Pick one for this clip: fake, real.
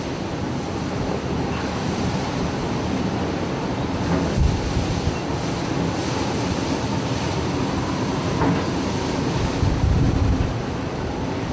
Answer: real